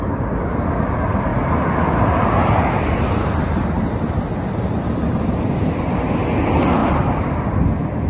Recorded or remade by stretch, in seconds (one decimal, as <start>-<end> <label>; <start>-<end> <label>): 0.0-4.3 recorded; 4.3-5.1 remade; 5.1-6.8 recorded; 6.8-8.1 remade